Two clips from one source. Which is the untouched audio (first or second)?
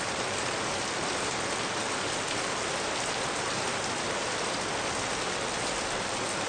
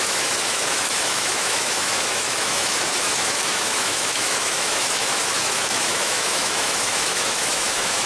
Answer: first